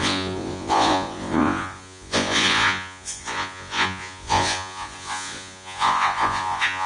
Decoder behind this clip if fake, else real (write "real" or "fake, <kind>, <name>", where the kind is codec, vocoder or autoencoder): fake, vocoder, Vocos